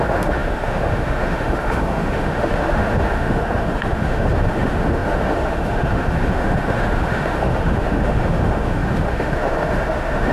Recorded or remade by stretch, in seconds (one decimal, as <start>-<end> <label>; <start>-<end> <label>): 0.0-10.3 remade